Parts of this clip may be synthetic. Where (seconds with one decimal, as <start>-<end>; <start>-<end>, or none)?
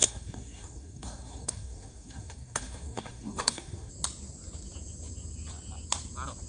0.0-3.9